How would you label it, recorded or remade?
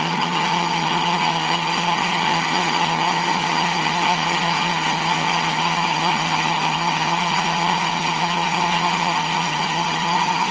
remade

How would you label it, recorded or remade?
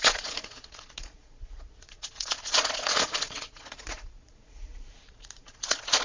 remade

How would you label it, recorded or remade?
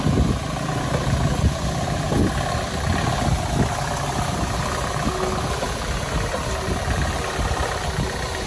recorded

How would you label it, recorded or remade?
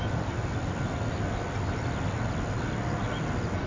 recorded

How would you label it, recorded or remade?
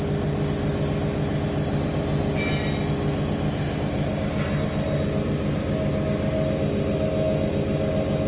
recorded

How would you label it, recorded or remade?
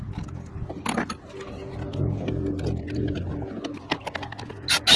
recorded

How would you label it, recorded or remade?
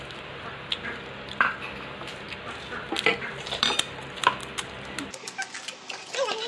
recorded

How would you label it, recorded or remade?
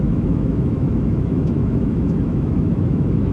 remade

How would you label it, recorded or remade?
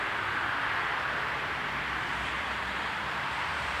remade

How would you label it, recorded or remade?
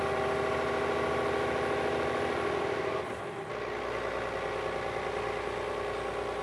recorded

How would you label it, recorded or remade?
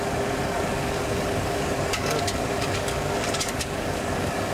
remade